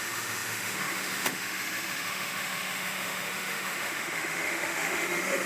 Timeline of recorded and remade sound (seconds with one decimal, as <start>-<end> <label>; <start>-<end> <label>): 0.0-5.5 remade